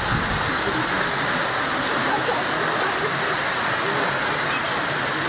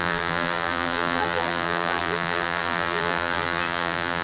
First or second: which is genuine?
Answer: first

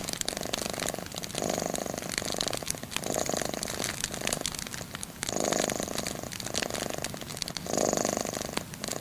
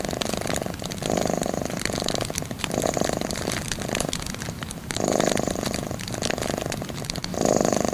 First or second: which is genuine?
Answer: first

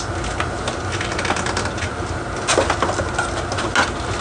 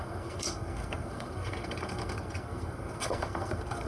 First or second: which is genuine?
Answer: first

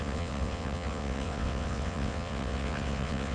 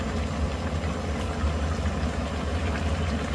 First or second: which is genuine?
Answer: second